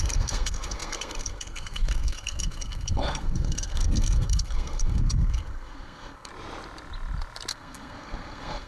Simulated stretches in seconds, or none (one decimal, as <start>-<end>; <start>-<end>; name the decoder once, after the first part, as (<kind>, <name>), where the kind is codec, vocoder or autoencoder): 0.0-6.3 (codec, SNAC); 7.5-8.7